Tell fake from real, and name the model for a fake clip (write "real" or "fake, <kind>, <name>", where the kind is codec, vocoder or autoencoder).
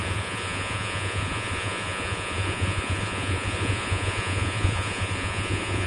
fake, vocoder, Vocos